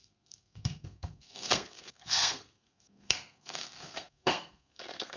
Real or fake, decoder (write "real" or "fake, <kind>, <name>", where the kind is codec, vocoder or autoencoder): fake, codec, SNAC